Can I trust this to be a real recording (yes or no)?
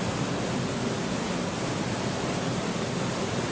yes